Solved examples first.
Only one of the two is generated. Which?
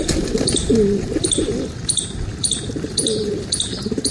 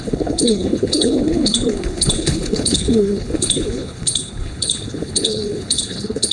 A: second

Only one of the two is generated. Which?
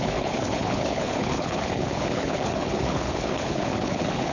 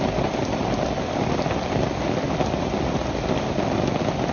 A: first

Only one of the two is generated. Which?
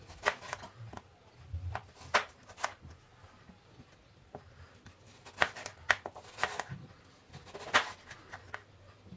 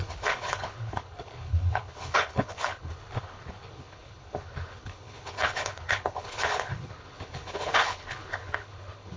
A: second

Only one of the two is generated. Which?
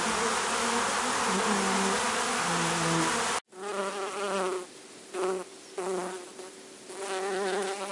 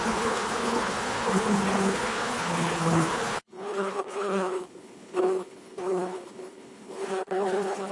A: second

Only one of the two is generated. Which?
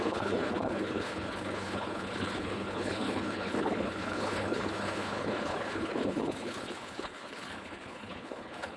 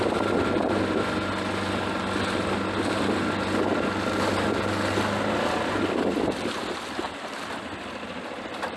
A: first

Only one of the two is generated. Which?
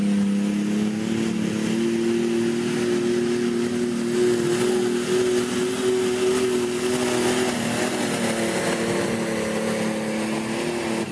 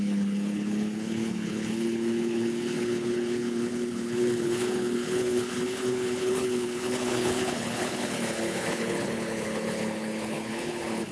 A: second